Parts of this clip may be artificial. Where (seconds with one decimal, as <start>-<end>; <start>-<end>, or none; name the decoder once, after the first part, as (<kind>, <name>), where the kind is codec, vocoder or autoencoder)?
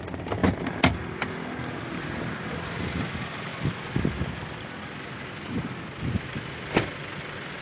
none